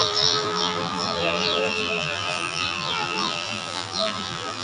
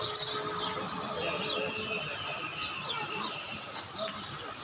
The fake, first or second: first